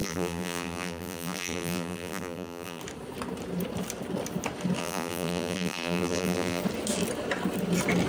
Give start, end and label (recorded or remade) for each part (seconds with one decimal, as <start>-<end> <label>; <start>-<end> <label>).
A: 0.0-2.8 remade; 2.8-4.8 recorded; 4.8-6.6 remade; 6.6-8.1 recorded